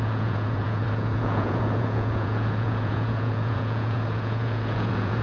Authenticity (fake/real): fake